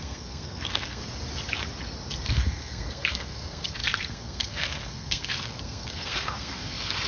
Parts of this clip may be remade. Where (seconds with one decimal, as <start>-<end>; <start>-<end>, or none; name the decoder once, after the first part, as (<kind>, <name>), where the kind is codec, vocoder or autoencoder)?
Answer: 0.0-1.0 (codec, SNAC); 2.3-7.1